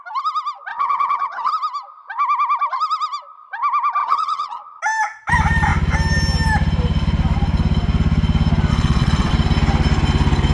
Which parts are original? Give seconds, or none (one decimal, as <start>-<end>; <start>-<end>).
0.0-0.7; 1.5-4.0; 4.8-8.7; 9.3-10.5